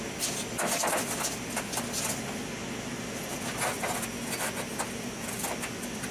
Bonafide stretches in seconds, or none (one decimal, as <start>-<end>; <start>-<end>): 0.0-6.1